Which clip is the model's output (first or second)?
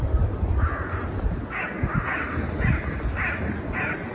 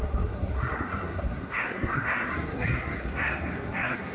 second